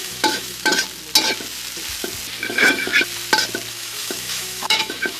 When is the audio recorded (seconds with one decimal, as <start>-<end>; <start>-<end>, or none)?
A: 0.7-2.5; 2.9-3.7

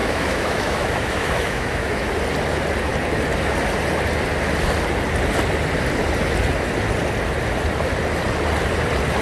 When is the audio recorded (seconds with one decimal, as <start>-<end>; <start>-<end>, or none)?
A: 2.1-9.2

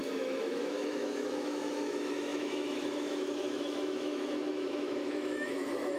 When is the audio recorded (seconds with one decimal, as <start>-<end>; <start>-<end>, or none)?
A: none

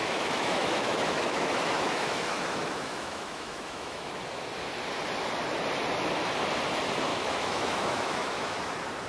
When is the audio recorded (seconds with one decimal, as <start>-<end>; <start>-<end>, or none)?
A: 4.1-7.1; 8.7-9.1

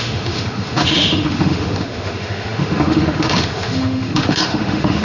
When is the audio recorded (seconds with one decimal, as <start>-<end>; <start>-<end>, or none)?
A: none